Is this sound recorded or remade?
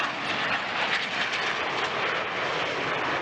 recorded